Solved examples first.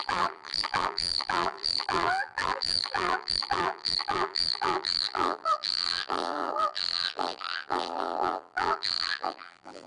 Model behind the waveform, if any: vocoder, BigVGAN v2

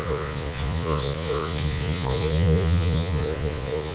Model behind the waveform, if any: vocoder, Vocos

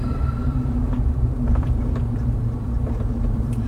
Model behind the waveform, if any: vocoder, BigVGAN v2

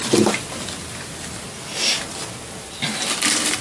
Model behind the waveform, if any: none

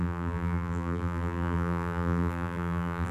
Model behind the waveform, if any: vocoder, BigVGAN v2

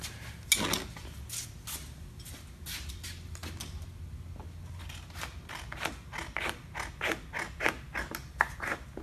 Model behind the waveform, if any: none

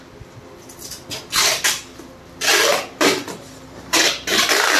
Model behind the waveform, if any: none